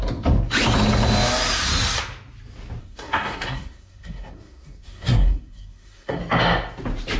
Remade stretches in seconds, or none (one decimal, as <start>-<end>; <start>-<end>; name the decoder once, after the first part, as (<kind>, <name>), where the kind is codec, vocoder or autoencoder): 2.8-6.2 (codec, SNAC)